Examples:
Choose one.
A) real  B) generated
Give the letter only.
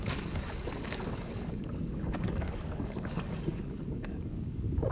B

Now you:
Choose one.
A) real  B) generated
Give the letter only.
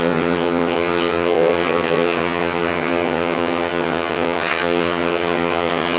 B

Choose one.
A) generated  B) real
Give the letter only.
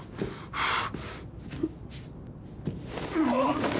B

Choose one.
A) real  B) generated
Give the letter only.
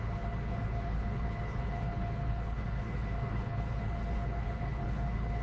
B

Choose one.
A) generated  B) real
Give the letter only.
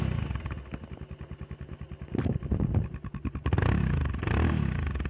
B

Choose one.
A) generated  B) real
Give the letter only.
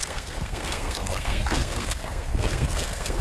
A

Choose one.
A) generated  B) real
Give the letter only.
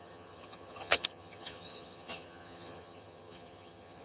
A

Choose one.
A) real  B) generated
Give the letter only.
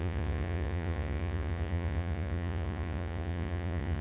B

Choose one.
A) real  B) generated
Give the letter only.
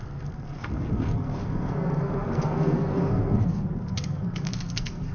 B